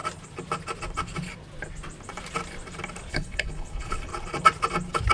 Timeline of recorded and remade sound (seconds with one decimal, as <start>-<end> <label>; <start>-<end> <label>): 0.0-3.1 recorded; 3.1-4.1 remade; 4.1-5.1 recorded